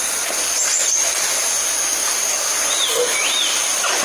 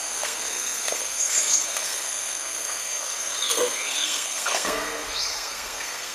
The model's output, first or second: second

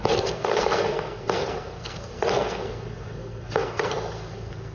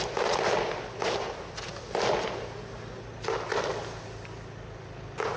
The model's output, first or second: first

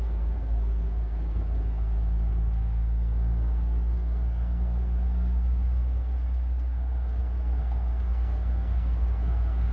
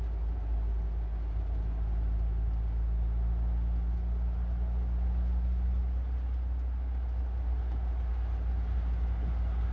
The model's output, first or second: first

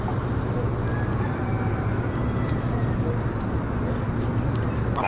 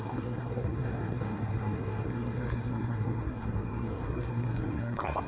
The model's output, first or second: second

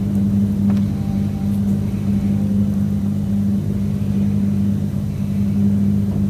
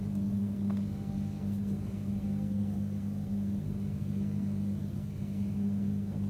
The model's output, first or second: second